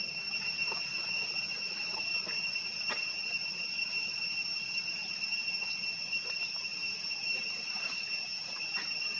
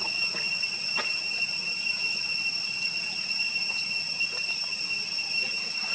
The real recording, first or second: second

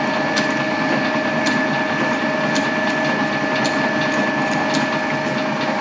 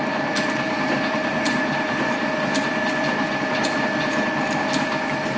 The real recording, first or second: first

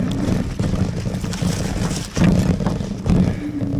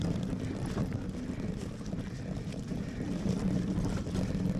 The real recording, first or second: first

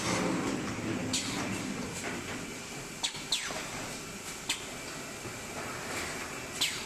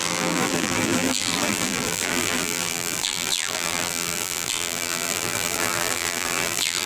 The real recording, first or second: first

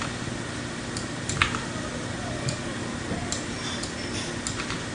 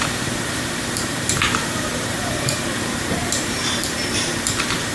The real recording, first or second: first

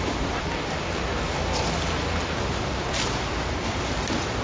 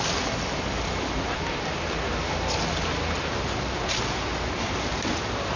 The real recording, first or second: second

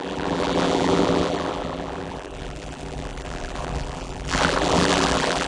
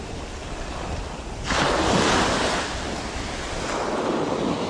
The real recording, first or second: second